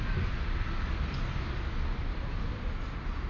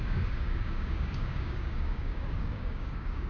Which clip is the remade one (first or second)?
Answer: second